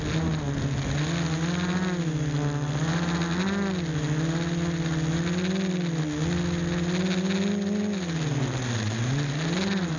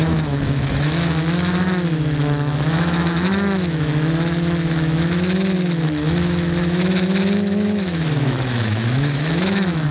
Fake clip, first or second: second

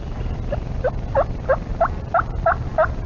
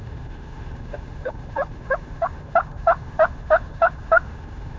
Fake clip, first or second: second